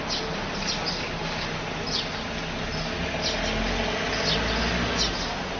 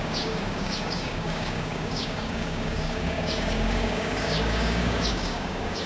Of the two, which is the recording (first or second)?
first